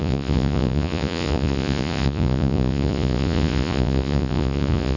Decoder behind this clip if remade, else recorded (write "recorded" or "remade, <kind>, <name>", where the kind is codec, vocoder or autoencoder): remade, vocoder, Vocos